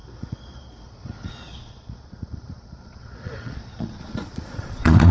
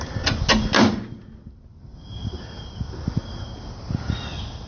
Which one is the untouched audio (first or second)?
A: second